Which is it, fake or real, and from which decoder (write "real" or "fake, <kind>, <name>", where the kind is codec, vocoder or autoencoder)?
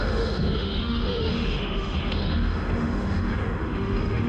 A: fake, autoencoder, DAC-VAE